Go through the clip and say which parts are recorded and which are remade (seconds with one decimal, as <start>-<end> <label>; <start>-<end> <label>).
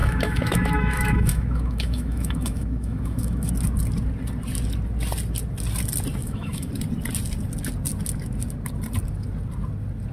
0.0-3.5 remade; 3.5-6.2 recorded; 6.2-6.7 remade; 6.7-10.1 recorded